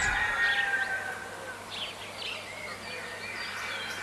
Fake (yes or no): no